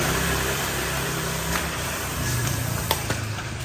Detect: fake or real fake